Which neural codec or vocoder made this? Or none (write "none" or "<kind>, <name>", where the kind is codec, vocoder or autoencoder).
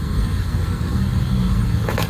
codec, SNAC